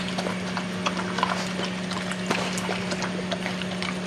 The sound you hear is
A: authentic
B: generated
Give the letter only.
A